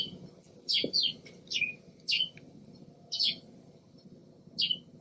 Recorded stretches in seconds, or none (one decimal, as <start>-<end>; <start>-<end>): 0.0-5.0